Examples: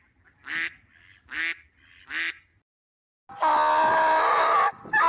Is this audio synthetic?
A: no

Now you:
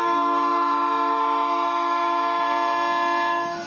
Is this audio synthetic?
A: yes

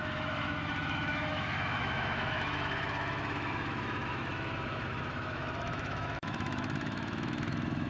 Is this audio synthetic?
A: yes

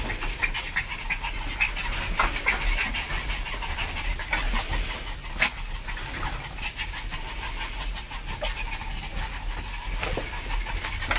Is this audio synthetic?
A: no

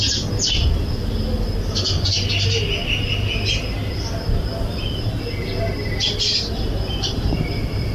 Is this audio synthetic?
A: no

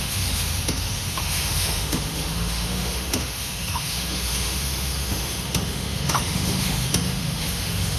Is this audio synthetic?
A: yes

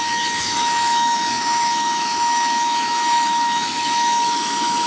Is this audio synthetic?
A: yes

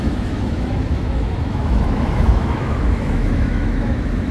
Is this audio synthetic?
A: yes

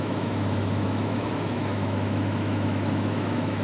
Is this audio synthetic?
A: yes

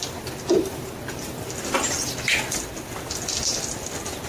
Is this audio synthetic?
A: no